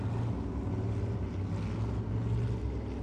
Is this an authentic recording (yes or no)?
yes